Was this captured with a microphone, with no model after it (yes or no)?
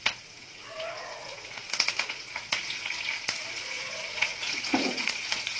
no